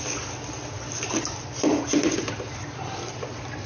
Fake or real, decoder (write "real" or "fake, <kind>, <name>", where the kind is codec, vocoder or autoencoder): real